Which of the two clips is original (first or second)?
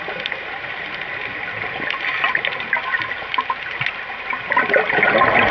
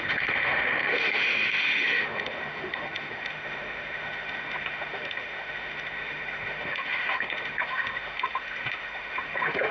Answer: first